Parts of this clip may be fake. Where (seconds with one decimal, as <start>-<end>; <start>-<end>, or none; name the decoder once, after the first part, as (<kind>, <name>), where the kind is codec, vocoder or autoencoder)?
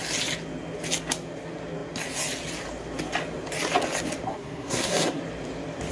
4.3-5.2 (codec, SNAC)